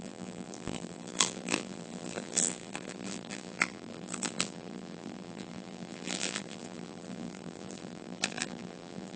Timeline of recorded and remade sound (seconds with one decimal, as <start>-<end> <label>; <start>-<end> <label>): 0.0-9.2 remade